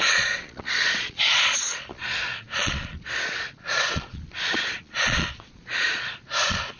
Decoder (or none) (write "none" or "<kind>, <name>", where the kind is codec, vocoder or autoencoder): vocoder, Vocos